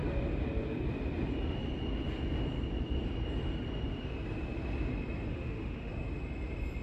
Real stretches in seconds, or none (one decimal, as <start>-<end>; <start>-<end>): 0.0-5.3; 5.9-6.8